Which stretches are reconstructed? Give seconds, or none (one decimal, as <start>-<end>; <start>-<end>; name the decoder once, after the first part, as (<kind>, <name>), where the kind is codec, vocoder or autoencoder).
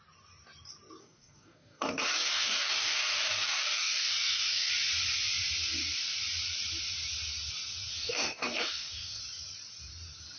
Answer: 1.0-4.7 (codec, DAC); 7.9-9.2